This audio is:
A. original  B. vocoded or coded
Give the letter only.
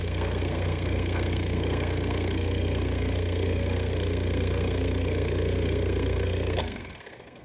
B